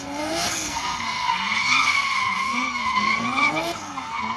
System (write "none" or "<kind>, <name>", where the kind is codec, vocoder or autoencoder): codec, SNAC